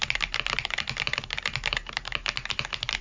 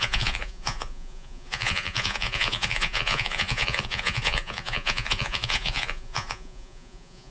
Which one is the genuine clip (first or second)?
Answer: first